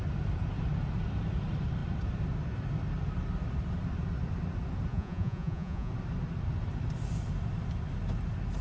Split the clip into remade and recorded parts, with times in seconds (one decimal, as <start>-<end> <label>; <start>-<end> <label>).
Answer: 0.0-4.9 recorded; 4.9-5.9 remade; 5.9-8.6 recorded